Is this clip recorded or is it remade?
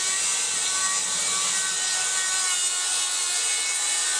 recorded